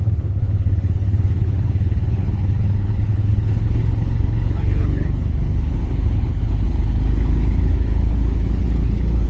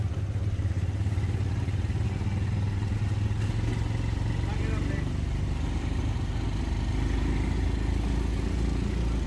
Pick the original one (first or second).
second